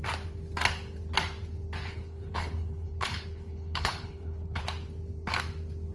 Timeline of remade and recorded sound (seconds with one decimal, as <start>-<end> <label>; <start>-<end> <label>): 0.0-1.9 recorded; 1.9-4.6 remade; 4.6-5.9 recorded